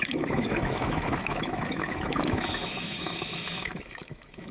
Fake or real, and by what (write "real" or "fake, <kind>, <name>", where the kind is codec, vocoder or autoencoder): fake, autoencoder, DAC-VAE